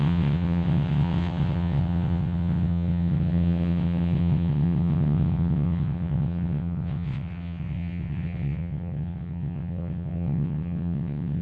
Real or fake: fake